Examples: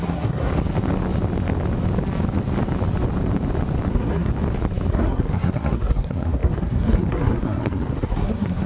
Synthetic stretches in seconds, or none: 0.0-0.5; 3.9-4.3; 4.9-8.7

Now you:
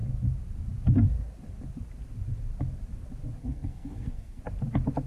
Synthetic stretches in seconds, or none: 3.4-4.4

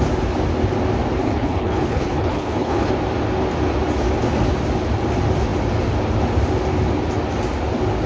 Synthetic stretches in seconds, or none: 1.2-2.9

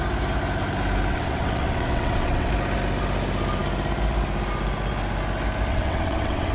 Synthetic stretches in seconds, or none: 1.1-2.5; 5.7-6.5

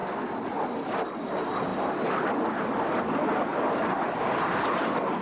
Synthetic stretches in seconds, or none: 3.5-4.4

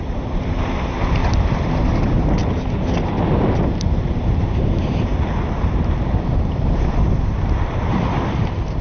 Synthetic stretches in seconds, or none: 0.0-1.2; 2.0-2.4; 3.6-8.8